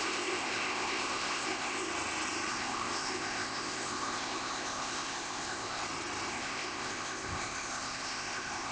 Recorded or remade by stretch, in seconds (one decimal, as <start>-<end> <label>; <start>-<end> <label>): 0.0-1.9 remade; 1.9-2.5 recorded; 2.5-5.8 remade; 5.8-6.3 recorded; 6.3-8.7 remade